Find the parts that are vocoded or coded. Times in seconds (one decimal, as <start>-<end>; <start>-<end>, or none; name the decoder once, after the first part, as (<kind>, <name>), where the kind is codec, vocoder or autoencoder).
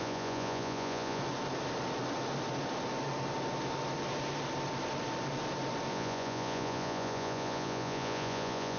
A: 0.0-1.2 (vocoder, Vocos); 5.9-8.8